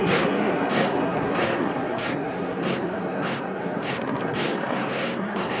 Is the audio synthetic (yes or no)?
yes